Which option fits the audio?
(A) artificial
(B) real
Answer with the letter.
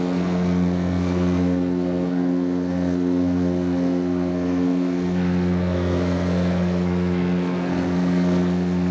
A